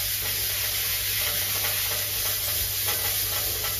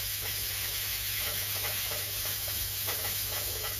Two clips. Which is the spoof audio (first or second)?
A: second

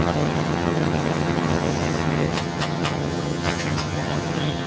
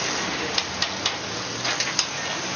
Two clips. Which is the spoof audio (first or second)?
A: first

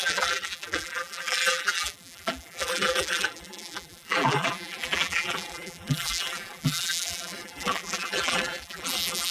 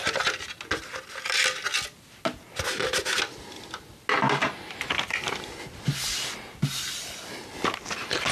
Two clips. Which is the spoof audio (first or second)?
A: first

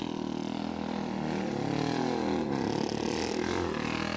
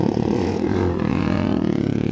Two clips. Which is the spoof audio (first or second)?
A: second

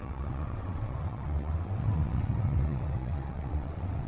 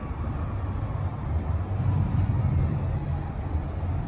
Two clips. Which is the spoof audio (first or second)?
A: first